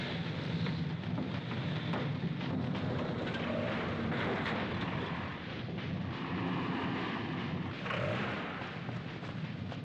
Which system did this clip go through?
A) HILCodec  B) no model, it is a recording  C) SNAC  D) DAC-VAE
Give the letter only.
B